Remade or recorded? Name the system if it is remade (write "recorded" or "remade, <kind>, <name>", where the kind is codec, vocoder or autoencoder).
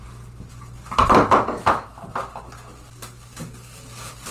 recorded